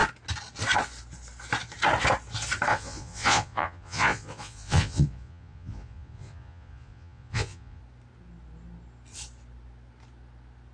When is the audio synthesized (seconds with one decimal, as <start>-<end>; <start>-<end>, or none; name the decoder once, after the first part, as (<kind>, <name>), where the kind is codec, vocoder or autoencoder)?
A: 2.7-7.8 (vocoder, Vocos)